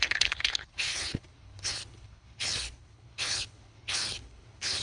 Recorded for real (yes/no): no